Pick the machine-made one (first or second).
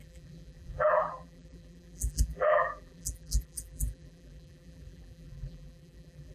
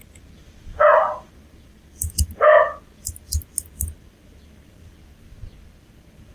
first